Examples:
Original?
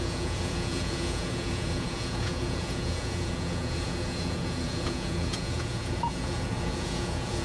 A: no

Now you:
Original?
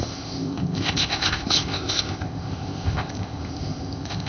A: no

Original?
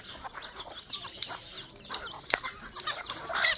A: yes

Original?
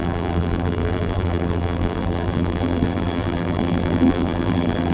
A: no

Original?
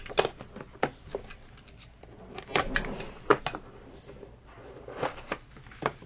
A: yes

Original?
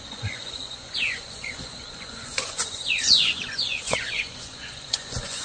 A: no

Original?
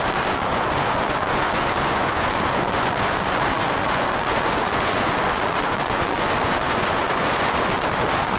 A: no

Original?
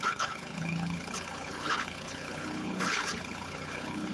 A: no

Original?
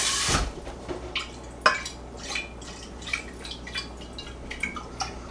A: yes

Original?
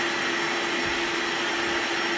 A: yes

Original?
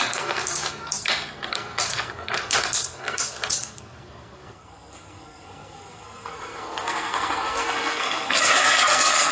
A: no